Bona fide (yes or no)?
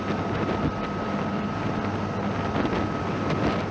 yes